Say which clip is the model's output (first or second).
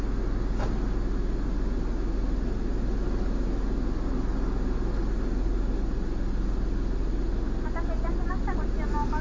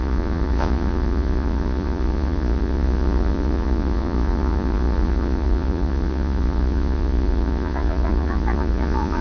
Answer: second